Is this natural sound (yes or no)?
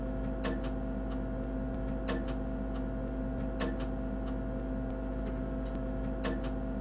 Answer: yes